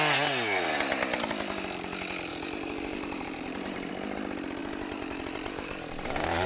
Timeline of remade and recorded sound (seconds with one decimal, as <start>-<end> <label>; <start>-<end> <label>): 0.0-2.3 recorded; 2.3-3.9 remade; 3.9-4.6 recorded; 4.6-6.5 remade